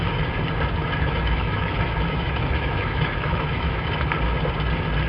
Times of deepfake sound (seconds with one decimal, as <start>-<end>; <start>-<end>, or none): 0.8-3.9